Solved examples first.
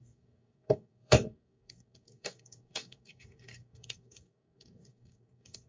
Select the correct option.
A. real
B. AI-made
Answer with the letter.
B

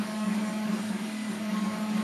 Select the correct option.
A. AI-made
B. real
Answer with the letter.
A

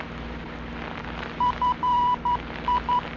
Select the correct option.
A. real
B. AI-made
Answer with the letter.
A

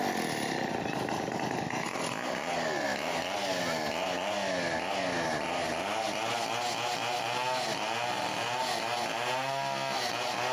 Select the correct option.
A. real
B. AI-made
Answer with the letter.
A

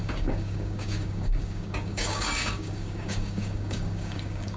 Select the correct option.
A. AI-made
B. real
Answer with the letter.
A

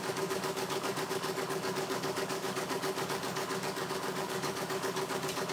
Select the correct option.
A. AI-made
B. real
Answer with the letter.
A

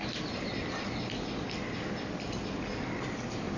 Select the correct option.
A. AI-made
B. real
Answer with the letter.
B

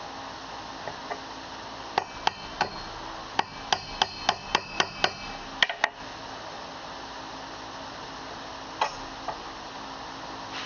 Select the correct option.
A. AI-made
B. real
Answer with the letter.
B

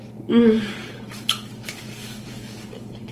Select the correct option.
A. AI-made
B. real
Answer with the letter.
A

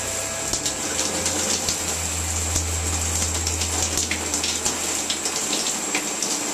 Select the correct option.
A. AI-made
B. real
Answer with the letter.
B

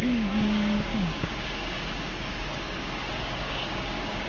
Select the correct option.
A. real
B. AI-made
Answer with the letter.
B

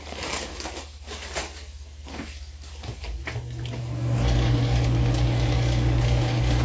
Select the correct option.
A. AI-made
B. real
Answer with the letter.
A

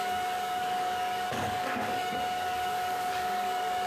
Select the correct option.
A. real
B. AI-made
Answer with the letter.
B